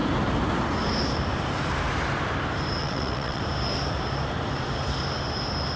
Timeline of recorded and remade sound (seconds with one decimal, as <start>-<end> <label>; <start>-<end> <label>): 0.0-2.8 recorded; 2.8-3.4 remade; 3.4-5.8 recorded